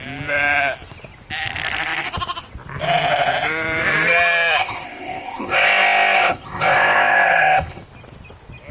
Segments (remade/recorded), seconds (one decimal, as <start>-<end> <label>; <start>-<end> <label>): 0.0-4.6 recorded; 4.6-7.8 remade; 7.8-8.7 recorded